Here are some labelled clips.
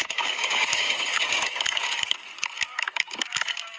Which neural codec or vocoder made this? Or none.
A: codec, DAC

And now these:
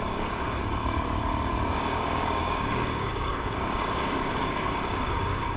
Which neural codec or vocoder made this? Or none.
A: codec, DAC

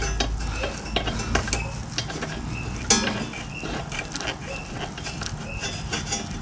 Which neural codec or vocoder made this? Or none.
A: none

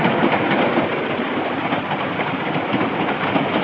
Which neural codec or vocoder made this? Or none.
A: none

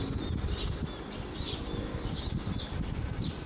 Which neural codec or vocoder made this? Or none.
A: none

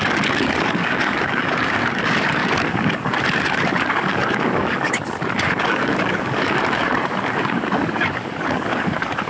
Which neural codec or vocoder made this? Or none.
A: codec, DAC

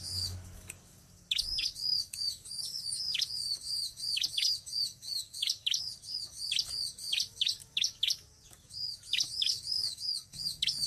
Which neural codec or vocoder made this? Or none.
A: codec, DAC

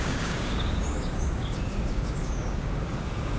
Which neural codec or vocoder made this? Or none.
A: codec, DAC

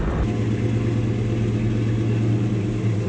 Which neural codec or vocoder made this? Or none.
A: none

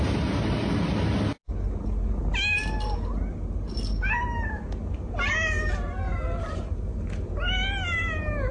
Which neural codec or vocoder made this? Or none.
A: none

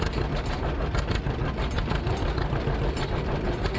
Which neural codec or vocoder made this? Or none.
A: none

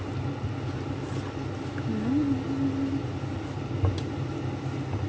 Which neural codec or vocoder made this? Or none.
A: none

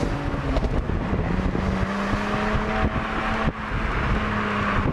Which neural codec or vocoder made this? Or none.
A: none